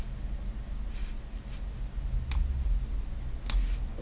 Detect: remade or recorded recorded